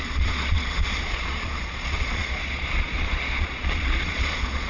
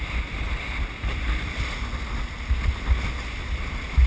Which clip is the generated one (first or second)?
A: first